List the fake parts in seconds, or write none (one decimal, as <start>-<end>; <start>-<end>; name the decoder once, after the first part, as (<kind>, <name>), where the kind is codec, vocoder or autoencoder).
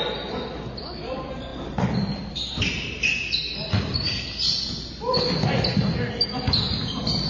none